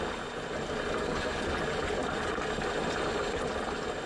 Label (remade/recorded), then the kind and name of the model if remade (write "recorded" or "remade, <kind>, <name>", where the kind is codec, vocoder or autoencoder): recorded